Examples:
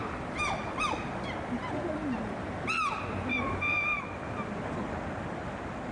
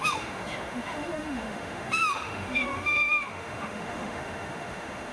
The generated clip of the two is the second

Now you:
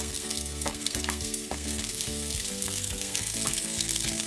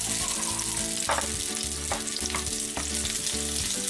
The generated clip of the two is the first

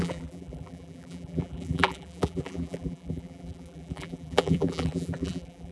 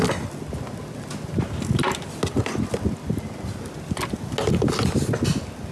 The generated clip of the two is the first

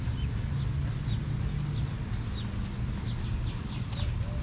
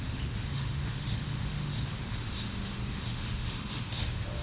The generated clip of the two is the second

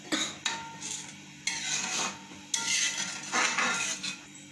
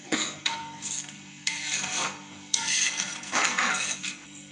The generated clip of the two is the second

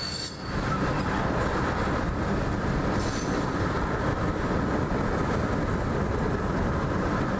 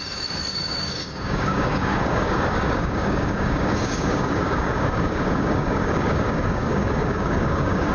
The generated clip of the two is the second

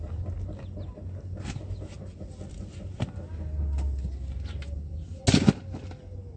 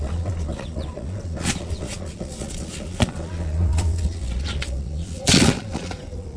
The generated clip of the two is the second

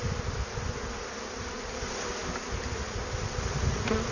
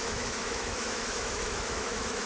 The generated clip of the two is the second